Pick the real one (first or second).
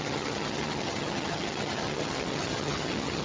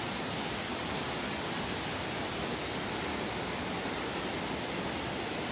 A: second